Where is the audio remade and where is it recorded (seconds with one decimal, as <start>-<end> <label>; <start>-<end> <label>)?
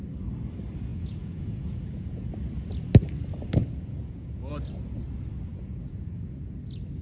0.0-0.9 recorded; 0.9-2.3 remade; 2.3-3.6 recorded; 3.6-4.5 remade; 4.5-5.5 recorded; 5.5-6.5 remade; 6.5-7.0 recorded